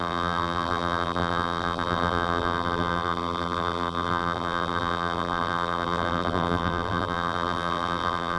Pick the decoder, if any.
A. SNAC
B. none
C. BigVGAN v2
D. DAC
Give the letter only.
C